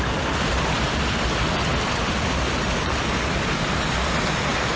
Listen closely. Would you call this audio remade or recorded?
recorded